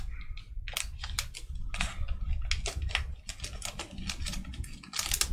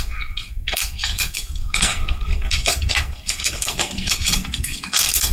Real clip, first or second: first